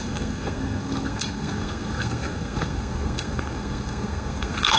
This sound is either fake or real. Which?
fake